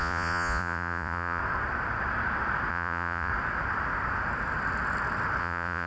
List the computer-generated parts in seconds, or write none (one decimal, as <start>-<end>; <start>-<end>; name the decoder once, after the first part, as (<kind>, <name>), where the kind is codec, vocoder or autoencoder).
0.0-1.4 (vocoder, Vocos); 2.7-3.3; 5.4-5.9